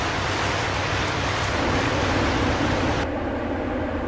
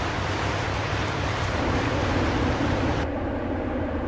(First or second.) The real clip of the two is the first